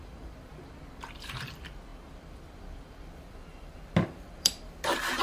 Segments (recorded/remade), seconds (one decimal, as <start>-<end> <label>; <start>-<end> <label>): 0.0-5.2 remade